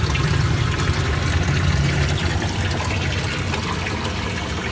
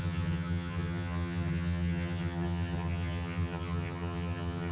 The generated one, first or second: second